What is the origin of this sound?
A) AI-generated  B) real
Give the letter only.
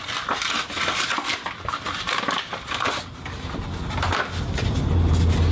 B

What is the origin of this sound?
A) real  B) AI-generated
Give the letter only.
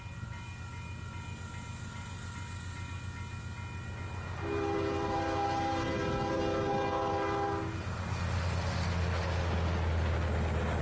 A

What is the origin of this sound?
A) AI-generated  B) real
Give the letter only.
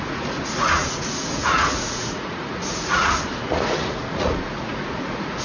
A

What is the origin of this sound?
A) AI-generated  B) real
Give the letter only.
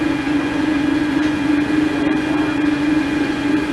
A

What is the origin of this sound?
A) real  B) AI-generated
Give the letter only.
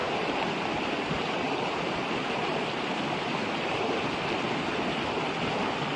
A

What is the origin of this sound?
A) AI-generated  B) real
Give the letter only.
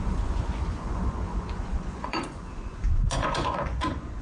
A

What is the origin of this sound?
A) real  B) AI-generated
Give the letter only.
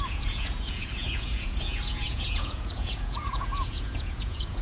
B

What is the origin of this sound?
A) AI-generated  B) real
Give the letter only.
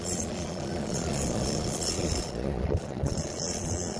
A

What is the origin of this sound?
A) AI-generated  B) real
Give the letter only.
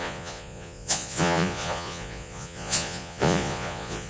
A